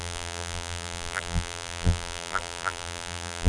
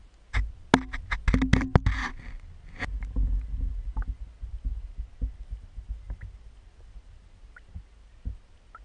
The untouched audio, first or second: second